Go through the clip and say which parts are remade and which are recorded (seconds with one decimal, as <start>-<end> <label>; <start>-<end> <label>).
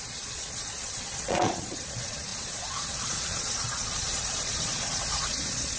0.0-5.8 remade